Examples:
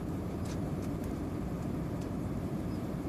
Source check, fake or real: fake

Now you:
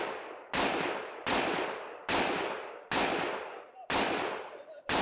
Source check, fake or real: fake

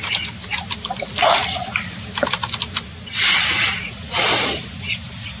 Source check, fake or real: fake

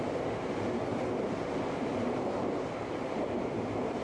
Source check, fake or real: fake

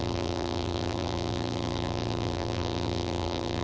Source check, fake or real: fake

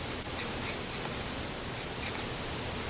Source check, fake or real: real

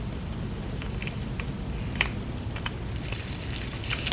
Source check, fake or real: real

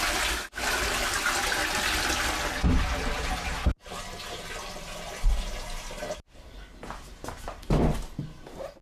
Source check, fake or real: real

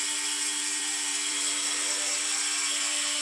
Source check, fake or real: fake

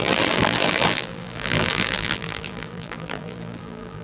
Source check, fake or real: fake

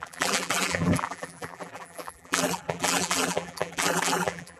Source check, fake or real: fake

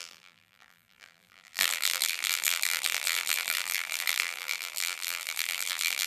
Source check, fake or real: fake